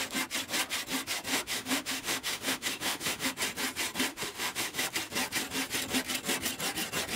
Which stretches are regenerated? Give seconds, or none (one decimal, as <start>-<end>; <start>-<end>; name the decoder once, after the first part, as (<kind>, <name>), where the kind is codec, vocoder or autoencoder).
1.3-3.3 (autoencoder, DAC-VAE); 4.1-4.9